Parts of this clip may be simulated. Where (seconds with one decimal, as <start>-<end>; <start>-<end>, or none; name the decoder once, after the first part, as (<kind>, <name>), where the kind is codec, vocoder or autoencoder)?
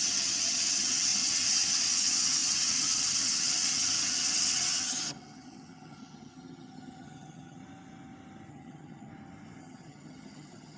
0.0-7.6 (vocoder, HiFi-GAN); 8.5-9.1; 9.6-10.8